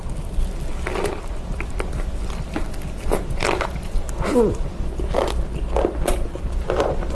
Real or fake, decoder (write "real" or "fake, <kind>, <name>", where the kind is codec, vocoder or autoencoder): real